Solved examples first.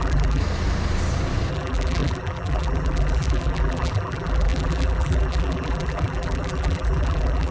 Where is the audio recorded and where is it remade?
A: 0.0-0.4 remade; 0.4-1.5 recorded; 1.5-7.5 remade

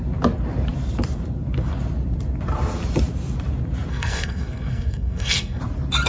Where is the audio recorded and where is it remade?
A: 0.0-3.9 recorded; 3.9-5.6 remade; 5.6-6.1 recorded

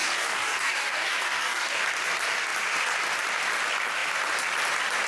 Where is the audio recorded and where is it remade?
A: 0.0-1.8 remade; 1.8-5.1 recorded

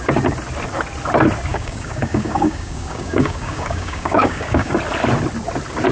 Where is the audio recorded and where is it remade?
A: 0.0-1.5 recorded; 1.5-4.7 remade; 4.7-5.9 recorded

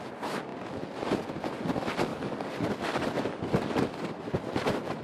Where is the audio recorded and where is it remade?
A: 0.0-2.1 recorded; 2.1-4.2 remade; 4.2-5.0 recorded

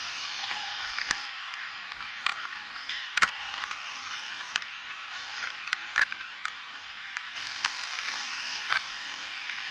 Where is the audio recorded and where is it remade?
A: 0.0-9.7 remade